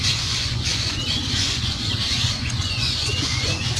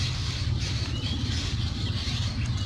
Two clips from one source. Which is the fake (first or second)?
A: first